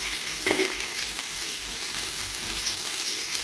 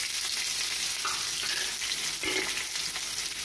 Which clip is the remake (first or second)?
first